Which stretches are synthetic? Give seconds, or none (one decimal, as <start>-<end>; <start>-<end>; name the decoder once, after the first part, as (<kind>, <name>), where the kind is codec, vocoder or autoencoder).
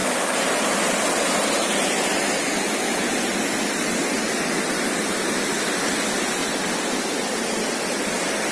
none